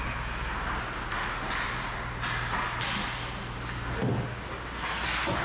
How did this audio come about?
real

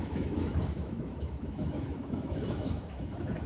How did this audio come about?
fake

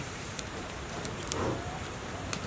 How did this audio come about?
fake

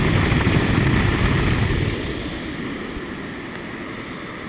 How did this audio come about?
real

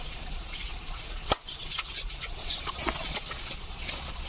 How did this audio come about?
fake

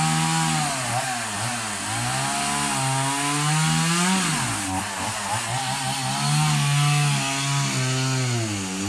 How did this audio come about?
real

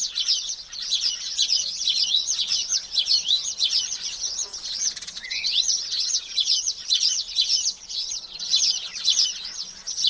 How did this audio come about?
fake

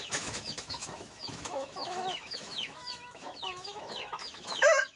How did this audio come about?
fake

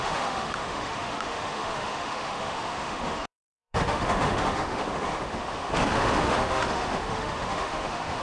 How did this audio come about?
fake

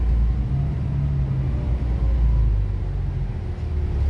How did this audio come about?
real